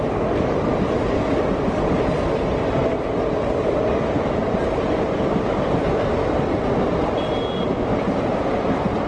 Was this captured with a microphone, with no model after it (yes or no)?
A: yes